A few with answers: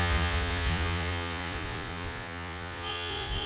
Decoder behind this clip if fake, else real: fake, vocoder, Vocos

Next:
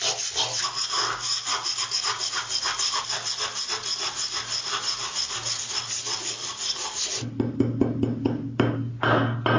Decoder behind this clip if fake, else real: real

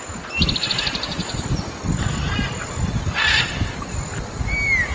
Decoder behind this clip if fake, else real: real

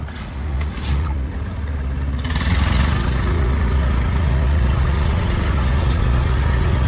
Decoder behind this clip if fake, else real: fake, vocoder, Vocos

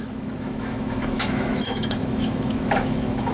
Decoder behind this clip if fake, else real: fake, autoencoder, DAC-VAE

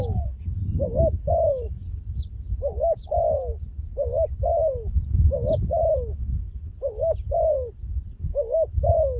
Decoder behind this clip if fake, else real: real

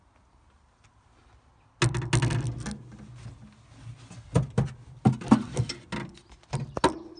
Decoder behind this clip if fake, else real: real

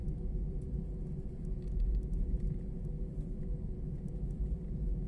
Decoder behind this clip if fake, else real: fake, vocoder, BigVGAN v2